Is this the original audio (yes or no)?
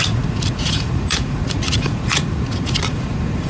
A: no